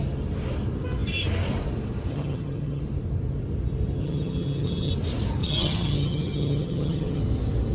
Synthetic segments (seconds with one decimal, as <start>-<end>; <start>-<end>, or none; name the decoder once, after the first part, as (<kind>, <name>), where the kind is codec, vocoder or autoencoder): 2.1-2.8 (vocoder, HiFi-GAN); 4.0-4.9; 5.4-7.2